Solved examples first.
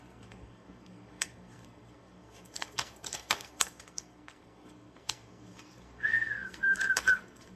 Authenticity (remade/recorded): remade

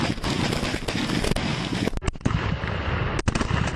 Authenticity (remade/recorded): recorded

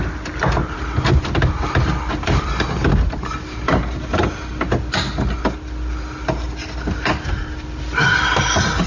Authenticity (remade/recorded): recorded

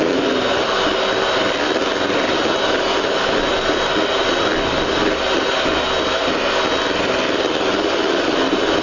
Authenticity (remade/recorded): recorded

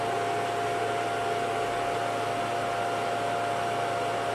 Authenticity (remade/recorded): recorded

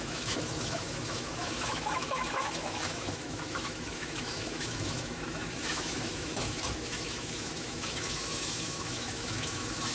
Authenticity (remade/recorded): remade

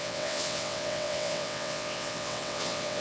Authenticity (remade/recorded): remade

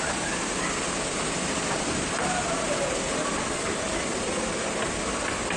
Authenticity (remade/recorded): recorded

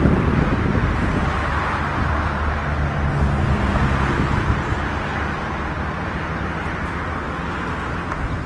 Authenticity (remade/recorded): recorded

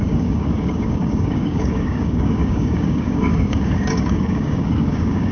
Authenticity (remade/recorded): remade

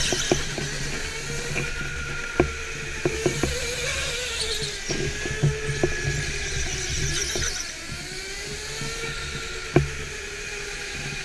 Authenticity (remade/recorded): recorded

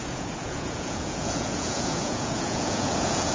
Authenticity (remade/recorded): remade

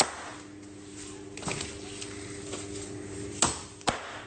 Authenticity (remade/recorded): recorded